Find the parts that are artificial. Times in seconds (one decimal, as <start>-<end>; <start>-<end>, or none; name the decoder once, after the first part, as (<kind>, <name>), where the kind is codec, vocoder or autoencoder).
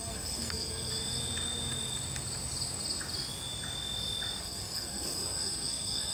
0.0-0.9 (codec, SNAC); 4.4-6.1